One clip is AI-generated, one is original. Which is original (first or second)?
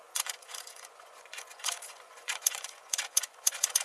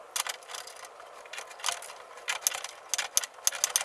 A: second